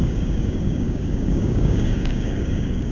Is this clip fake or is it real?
fake